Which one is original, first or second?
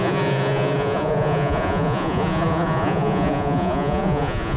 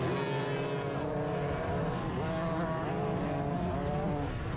second